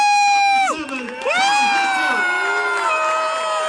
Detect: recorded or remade recorded